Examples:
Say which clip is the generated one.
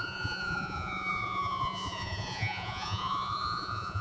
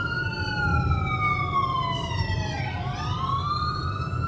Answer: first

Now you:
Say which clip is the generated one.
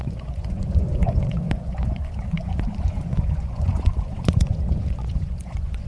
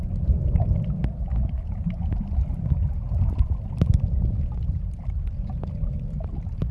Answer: first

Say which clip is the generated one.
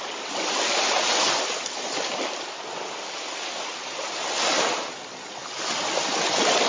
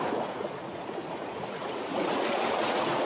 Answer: second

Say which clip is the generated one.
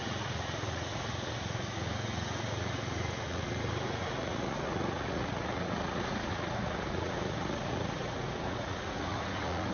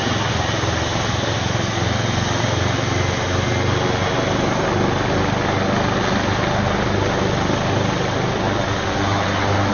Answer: first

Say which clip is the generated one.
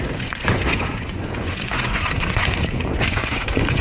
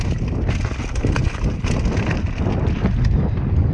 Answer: first